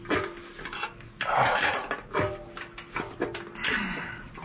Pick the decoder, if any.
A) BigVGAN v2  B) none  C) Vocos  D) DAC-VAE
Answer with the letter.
B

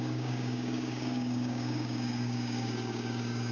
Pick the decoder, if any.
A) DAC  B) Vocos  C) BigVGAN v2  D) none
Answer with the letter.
A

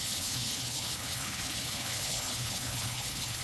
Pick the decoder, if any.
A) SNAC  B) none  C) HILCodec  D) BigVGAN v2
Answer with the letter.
C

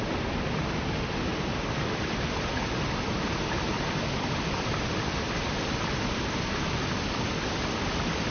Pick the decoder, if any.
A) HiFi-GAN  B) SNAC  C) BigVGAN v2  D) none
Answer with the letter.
C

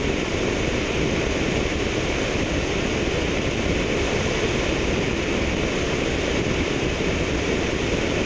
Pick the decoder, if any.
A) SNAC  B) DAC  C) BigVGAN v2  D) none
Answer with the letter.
C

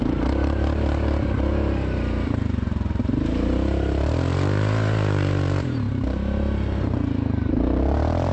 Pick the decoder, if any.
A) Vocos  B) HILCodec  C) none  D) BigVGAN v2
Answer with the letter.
D